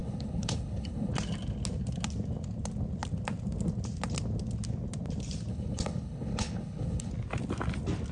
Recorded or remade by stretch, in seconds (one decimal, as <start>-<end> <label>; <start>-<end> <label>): 0.0-1.1 remade; 1.1-5.5 recorded; 5.5-7.1 remade; 7.1-8.1 recorded